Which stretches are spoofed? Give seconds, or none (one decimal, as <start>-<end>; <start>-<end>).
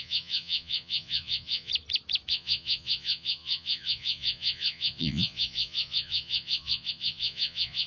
0.0-1.7; 2.3-7.9